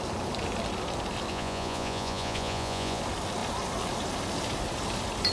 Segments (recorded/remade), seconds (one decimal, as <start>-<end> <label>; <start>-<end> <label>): 0.0-1.3 recorded; 1.3-3.0 remade; 3.0-5.3 recorded